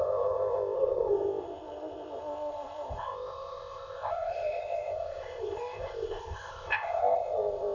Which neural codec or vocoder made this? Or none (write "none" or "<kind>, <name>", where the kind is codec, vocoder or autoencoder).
codec, ZipCodec